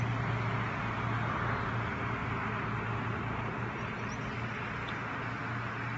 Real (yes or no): yes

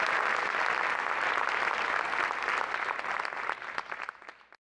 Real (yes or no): yes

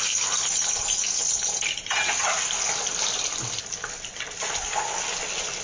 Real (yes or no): yes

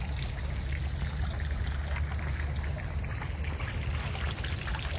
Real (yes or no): yes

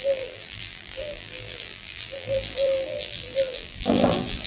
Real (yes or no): no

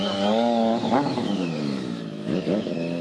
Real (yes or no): no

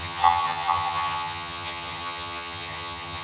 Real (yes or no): no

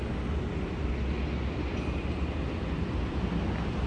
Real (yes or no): yes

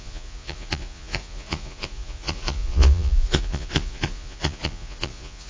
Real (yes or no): no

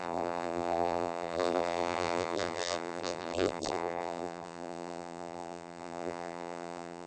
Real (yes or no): no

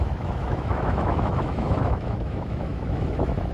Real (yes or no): no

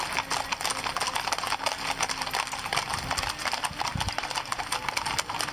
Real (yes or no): yes